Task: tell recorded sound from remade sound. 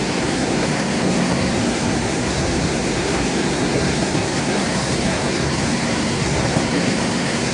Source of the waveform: remade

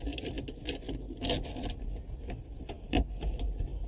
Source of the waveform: recorded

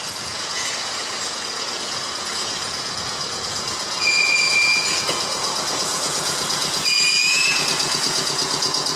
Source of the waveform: remade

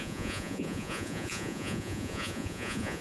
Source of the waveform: remade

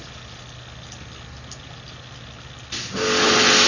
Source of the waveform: recorded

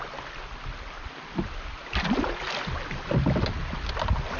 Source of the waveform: recorded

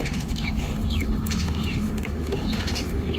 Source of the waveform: remade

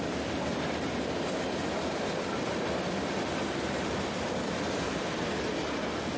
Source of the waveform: recorded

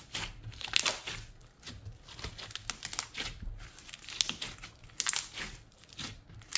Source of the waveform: recorded